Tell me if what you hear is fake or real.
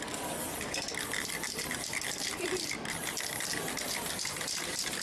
real